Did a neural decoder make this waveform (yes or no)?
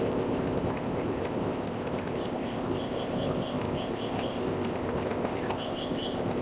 yes